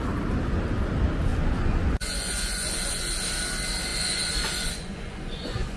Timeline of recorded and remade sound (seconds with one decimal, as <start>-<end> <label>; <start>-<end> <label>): 0.0-1.3 recorded; 1.3-3.1 remade; 3.1-3.9 recorded; 3.9-5.8 remade